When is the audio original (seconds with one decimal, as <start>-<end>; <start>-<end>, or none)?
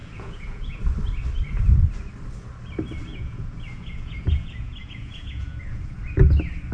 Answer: 0.8-3.1; 6.0-6.7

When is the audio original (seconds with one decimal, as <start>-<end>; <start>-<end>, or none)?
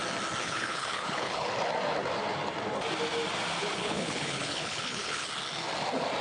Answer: 0.0-0.4; 1.5-3.6; 5.3-6.2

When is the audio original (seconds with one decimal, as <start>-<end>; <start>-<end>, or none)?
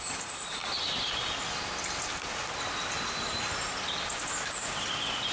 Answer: 0.6-3.8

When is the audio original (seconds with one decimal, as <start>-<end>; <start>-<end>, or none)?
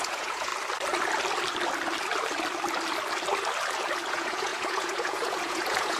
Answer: 0.5-4.1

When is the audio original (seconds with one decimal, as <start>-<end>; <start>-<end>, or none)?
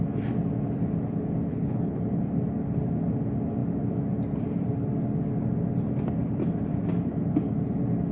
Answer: 0.0-1.5; 2.0-8.1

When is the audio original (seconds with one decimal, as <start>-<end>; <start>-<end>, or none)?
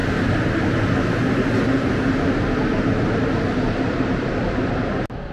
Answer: 0.0-5.3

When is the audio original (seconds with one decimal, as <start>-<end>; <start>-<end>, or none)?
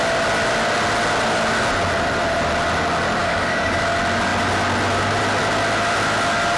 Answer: 0.0-3.2; 3.8-6.6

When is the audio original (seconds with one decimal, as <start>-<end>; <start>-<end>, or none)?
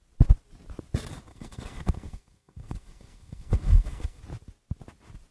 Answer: 0.0-1.3; 4.2-5.3